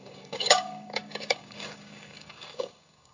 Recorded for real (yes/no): no